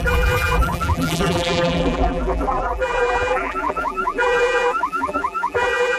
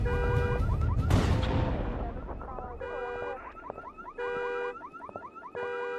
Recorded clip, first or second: second